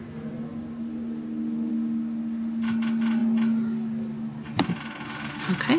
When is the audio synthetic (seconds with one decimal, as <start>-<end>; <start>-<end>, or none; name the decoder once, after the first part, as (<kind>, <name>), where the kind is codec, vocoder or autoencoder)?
none